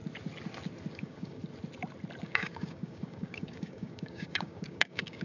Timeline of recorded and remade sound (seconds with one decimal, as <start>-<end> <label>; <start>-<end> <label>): 0.0-0.9 recorded; 0.9-1.4 remade; 1.4-2.2 recorded; 2.2-5.2 remade